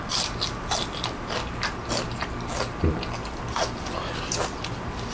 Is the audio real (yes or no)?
yes